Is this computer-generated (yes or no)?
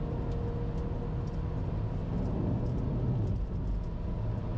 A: no